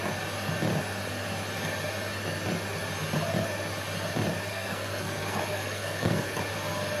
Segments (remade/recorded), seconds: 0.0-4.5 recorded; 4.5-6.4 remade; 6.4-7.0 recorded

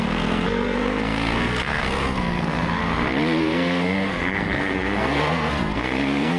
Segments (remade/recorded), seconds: 0.0-2.8 remade; 2.8-3.4 recorded; 3.4-6.4 remade

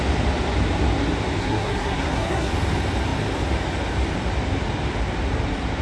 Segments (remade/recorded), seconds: 0.0-1.4 recorded; 1.4-2.5 remade; 2.5-5.8 recorded

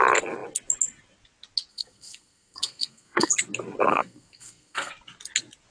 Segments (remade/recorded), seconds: 0.0-1.7 recorded; 1.7-3.3 remade; 3.3-3.9 recorded; 3.9-4.9 remade; 4.9-5.7 recorded

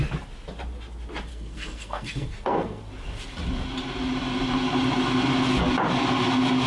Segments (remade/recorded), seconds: 0.0-1.3 recorded; 1.3-2.8 remade; 2.8-6.7 recorded